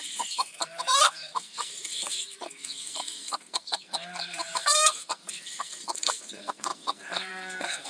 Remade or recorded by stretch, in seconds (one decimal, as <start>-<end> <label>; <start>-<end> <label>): 0.0-7.9 remade